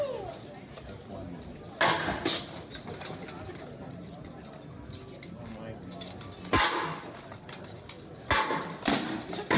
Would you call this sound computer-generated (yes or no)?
no